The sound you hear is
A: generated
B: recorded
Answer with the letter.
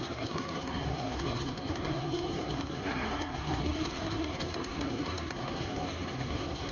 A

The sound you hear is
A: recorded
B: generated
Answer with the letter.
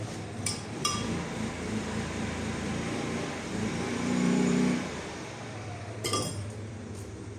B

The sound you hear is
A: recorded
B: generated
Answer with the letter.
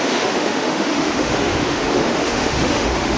B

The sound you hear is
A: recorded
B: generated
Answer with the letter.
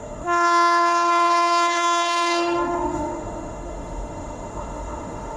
B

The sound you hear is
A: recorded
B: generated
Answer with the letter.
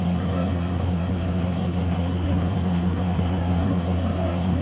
B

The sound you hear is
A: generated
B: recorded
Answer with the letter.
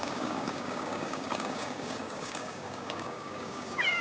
A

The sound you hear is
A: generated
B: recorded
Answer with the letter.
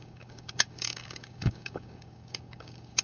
A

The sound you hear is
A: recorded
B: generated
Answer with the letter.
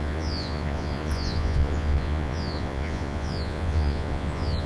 B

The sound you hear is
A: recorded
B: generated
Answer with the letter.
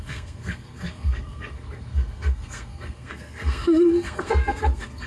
B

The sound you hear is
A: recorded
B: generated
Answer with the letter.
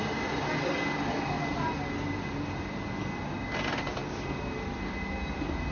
A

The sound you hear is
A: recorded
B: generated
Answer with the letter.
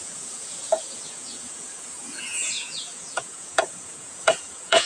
B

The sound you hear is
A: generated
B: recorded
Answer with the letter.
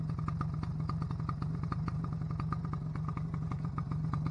B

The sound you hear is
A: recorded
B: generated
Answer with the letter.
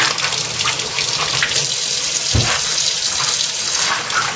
A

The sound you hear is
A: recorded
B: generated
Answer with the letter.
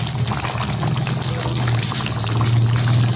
A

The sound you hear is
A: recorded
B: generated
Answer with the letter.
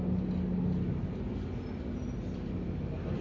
A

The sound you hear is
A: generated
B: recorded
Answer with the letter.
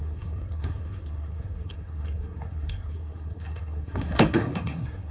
A